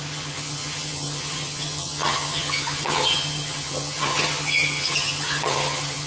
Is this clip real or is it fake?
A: fake